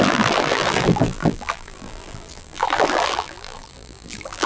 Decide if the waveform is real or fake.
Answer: fake